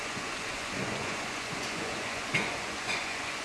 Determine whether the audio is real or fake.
fake